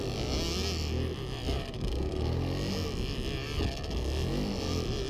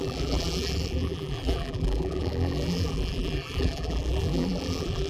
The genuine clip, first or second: first